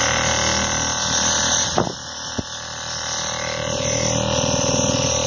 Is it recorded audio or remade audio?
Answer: recorded